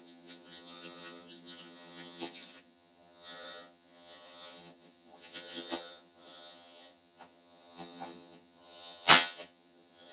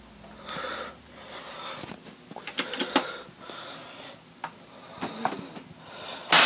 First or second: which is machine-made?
first